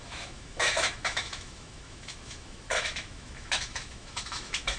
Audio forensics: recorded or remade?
remade